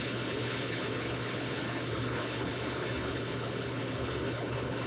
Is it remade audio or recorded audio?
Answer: remade